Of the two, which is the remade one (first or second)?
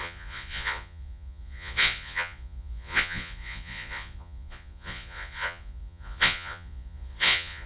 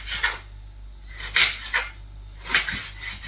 first